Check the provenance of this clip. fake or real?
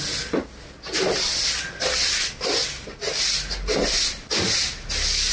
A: real